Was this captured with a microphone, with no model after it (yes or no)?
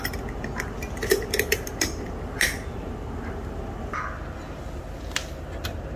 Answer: yes